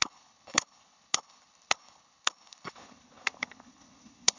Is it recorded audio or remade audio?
remade